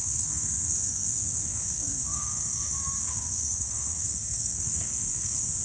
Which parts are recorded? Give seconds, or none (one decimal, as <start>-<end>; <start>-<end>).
none